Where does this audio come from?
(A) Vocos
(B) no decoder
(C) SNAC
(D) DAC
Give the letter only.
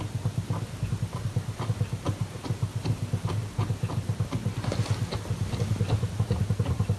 B